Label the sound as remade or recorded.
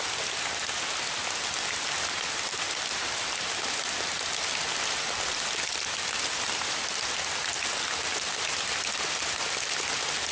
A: recorded